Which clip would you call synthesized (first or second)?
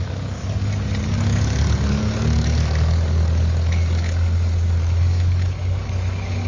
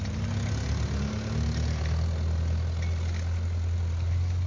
first